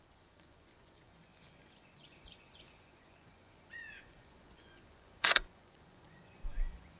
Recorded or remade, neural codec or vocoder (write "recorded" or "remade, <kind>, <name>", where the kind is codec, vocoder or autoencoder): remade, vocoder, Vocos